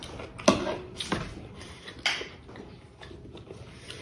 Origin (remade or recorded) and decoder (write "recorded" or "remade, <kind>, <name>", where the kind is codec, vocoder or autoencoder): recorded